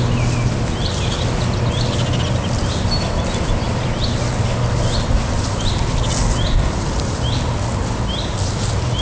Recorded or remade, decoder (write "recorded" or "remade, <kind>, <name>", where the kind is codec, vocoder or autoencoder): recorded